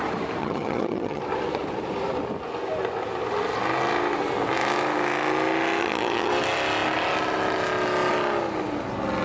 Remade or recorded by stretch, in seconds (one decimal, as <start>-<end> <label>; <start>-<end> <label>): 0.0-0.4 recorded; 0.4-1.2 remade; 1.2-5.8 recorded; 5.8-6.3 remade; 6.3-9.2 recorded